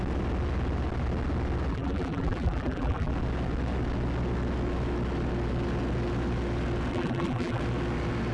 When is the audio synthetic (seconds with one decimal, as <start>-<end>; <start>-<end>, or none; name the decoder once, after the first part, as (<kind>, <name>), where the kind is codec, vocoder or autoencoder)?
1.7-3.1 (vocoder, BigVGAN v2); 6.9-7.6